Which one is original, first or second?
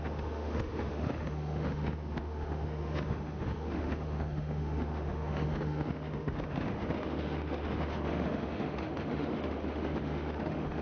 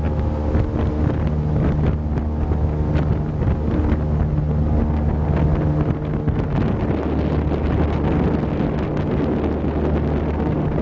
second